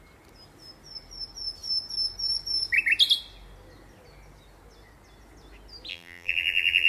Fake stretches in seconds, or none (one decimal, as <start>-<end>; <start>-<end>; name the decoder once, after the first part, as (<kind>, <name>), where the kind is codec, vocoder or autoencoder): 5.9-6.9 (vocoder, BigVGAN v2)